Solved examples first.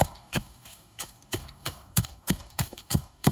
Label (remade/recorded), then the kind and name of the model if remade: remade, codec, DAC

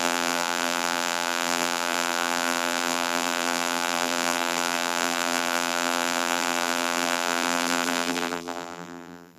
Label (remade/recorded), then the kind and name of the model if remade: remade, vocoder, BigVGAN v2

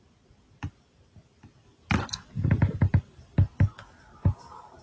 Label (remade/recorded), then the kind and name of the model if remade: recorded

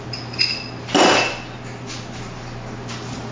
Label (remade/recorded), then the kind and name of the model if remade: recorded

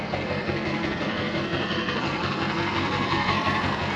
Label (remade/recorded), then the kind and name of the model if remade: remade, codec, SNAC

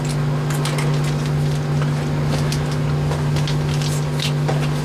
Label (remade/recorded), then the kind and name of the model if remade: recorded